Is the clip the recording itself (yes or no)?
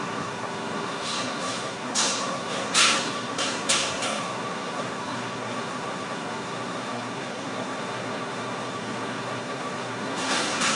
no